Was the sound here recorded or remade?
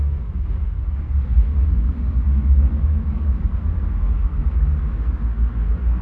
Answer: remade